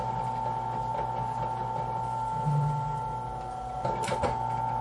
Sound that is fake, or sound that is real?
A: real